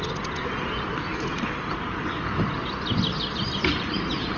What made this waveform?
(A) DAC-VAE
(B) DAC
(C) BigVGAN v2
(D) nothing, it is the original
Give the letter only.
D